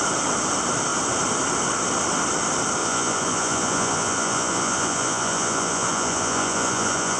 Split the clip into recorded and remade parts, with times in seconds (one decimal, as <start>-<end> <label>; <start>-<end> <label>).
0.0-2.8 recorded; 2.8-7.2 remade